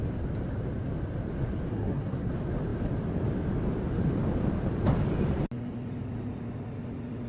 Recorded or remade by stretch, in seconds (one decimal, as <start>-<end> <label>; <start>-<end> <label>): 0.0-1.7 recorded; 1.7-2.3 remade; 2.3-7.3 recorded